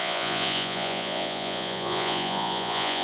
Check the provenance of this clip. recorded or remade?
remade